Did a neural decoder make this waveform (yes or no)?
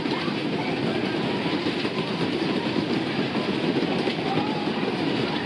no